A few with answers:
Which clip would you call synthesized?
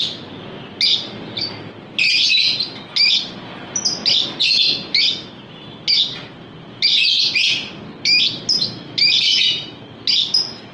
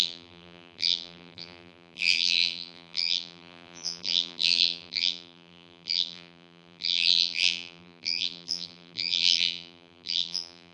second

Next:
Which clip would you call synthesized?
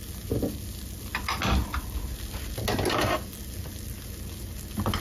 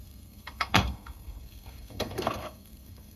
second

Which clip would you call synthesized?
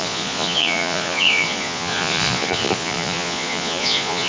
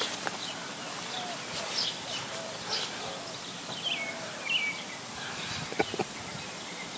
first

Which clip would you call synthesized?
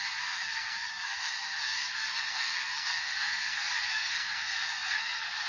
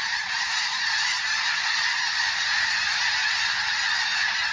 first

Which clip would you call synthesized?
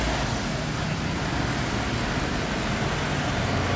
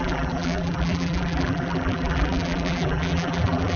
second